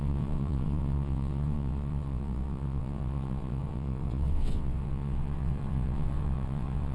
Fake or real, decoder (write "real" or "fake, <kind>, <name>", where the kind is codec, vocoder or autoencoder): fake, vocoder, WaveNeXt